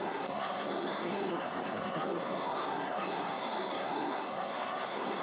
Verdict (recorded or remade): remade